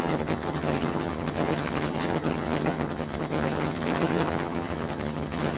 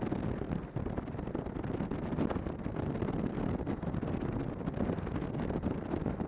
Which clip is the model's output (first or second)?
first